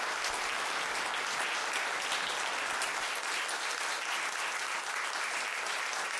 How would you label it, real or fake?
real